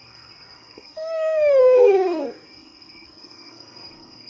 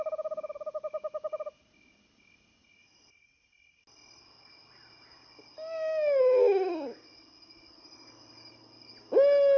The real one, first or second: second